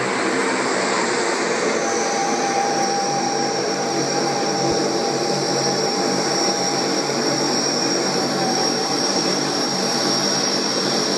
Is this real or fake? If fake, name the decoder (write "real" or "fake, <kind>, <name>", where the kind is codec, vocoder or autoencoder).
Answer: fake, vocoder, BigVGAN v2